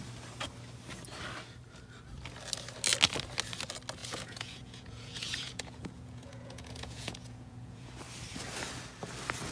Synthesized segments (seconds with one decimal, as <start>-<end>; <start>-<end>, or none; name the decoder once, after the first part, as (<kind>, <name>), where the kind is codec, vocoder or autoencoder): 4.0-7.9 (vocoder, Vocos)